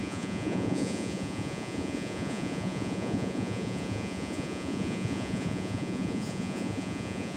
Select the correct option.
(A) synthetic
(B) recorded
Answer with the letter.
A